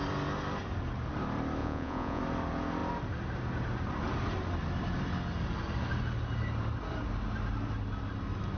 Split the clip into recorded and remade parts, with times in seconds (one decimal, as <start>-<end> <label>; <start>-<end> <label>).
0.0-1.6 recorded; 1.6-2.2 remade; 2.2-8.6 recorded